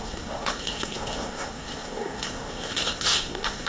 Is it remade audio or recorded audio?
remade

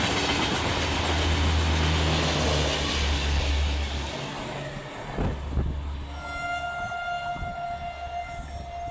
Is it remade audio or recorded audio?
recorded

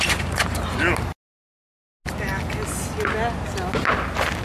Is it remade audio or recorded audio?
recorded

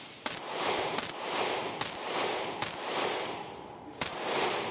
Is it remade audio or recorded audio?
recorded